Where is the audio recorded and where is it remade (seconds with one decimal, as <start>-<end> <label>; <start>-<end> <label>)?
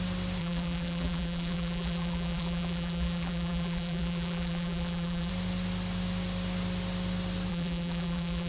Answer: 0.0-0.4 recorded; 0.4-5.3 remade; 5.3-7.5 recorded; 7.5-8.5 remade